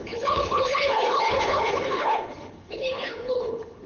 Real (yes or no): no